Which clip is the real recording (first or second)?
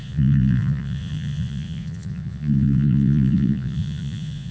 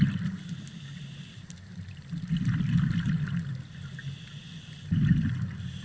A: second